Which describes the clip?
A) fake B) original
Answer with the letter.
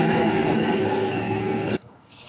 A